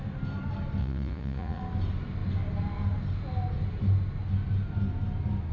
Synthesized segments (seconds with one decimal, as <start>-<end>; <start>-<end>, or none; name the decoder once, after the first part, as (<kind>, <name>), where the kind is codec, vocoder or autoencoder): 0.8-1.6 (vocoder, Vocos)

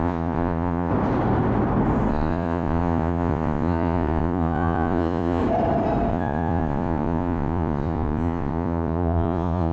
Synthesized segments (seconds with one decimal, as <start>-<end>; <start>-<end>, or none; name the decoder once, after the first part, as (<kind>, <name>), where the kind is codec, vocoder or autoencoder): 0.0-0.9 (vocoder, Vocos); 2.1-5.4; 6.1-9.7

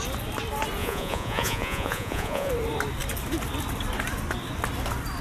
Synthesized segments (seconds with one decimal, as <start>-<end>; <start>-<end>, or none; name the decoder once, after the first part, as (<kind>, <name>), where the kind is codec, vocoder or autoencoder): 0.8-2.5 (vocoder, Vocos)

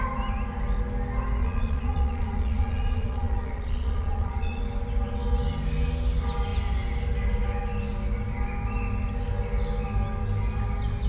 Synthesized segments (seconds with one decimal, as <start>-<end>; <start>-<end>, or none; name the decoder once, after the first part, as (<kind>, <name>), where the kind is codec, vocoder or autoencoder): 1.4-4.6 (vocoder, Vocos)

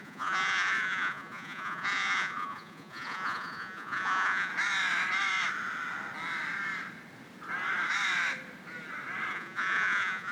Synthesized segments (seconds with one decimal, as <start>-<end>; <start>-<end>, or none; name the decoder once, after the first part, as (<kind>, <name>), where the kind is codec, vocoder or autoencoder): 0.0-4.5 (vocoder, Vocos); 9.3-10.3

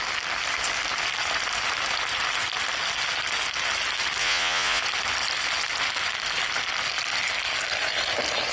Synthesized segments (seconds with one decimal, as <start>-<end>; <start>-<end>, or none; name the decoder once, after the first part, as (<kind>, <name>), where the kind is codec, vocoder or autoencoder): 4.2-4.8 (vocoder, Vocos)

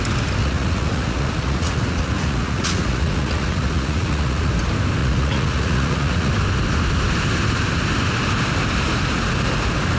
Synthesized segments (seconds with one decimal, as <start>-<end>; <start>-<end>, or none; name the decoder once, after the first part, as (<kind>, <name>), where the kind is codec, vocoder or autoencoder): 0.4-4.5 (vocoder, Vocos); 5.0-6.3

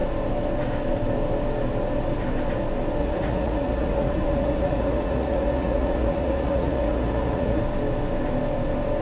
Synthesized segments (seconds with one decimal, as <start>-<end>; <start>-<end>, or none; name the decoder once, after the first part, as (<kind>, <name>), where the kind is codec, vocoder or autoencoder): 3.0-7.6 (vocoder, Vocos)